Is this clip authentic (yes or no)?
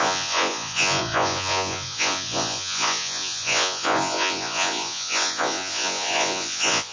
no